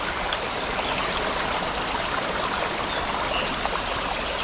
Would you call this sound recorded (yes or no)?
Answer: no